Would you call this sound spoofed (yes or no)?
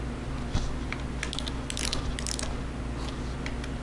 no